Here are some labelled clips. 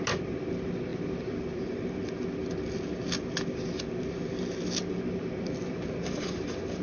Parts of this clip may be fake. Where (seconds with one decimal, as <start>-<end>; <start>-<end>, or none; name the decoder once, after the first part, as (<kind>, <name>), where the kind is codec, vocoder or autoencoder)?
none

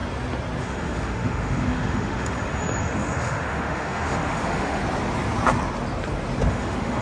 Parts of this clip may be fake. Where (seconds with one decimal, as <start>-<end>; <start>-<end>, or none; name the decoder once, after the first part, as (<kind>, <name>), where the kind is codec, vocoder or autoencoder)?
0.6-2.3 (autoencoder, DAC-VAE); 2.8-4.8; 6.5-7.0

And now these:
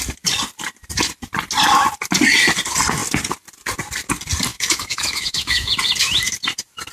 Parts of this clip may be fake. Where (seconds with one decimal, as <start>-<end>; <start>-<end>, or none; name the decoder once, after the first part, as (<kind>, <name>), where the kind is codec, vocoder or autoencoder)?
4.5-5.7 (autoencoder, DAC-VAE)

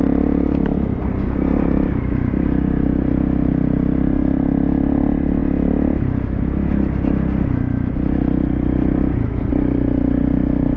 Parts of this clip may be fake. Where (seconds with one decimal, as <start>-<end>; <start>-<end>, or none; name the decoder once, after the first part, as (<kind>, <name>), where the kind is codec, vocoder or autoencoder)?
none

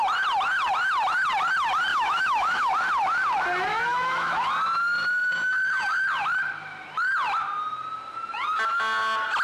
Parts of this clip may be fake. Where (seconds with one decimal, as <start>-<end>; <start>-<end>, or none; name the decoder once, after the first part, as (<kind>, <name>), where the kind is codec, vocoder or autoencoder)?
1.9-2.7 (autoencoder, DAC-VAE); 3.7-4.4

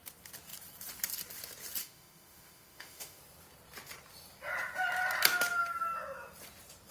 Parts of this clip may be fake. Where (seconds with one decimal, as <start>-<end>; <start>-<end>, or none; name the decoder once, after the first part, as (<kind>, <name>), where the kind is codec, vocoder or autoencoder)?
1.8-3.2 (autoencoder, DAC-VAE)